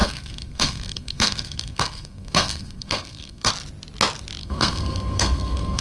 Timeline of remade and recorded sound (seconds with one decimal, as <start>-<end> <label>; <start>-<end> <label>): 0.0-3.5 remade; 3.5-4.4 recorded; 4.4-5.8 remade

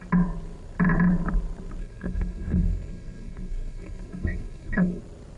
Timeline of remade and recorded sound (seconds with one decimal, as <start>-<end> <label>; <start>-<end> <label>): 0.0-1.8 recorded; 1.8-5.0 remade; 5.0-5.4 recorded

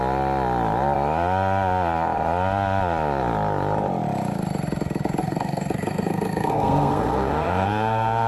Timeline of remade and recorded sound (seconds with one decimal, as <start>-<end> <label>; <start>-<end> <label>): 0.0-5.2 recorded; 5.2-8.3 remade

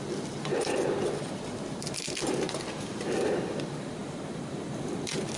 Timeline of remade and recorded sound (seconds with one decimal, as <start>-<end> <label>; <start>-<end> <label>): 0.0-5.4 recorded

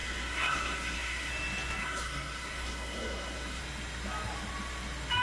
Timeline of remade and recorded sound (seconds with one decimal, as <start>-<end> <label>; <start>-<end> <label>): 0.0-1.3 remade; 1.3-1.8 recorded; 1.8-3.6 remade; 3.6-5.2 recorded

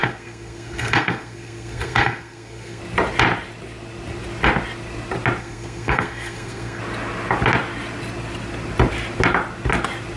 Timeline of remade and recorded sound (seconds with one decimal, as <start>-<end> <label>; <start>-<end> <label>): 0.0-2.8 remade; 2.8-5.4 recorded; 5.4-6.8 remade; 6.8-10.2 recorded

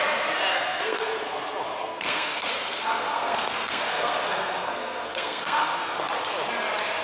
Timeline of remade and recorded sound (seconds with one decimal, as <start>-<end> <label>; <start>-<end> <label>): 0.0-0.5 recorded; 0.5-1.4 remade; 1.4-1.8 recorded; 1.8-6.0 remade; 6.0-7.0 recorded